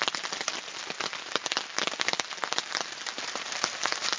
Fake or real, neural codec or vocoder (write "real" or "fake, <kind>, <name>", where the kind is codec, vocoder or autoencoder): real